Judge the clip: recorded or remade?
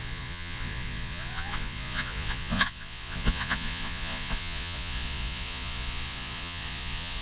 remade